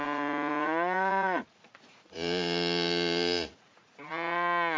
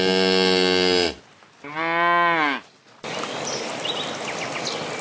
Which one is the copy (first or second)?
first